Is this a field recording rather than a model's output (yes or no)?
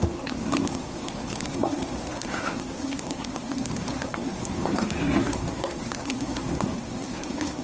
no